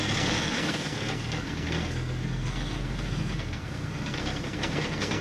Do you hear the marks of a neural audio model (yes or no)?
yes